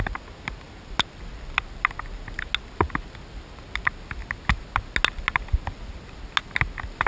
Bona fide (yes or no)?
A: yes